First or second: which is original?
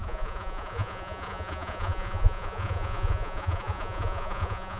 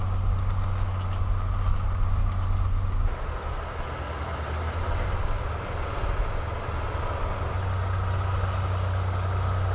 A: second